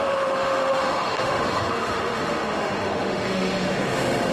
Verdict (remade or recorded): remade